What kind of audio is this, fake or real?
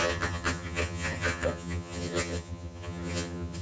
fake